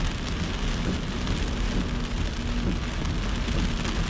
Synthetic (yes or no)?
no